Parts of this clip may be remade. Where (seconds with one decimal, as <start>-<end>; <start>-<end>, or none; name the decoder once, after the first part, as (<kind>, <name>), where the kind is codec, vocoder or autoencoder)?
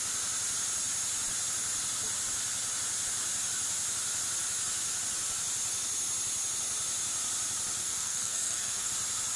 7.8-8.9 (codec, SNAC)